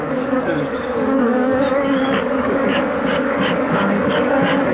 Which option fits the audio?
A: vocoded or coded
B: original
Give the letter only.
A